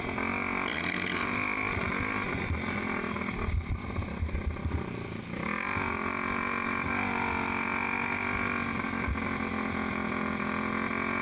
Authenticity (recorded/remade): recorded